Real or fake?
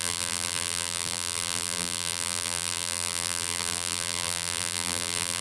fake